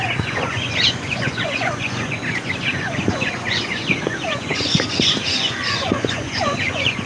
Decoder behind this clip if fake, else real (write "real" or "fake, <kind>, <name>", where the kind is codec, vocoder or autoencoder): fake, vocoder, Vocos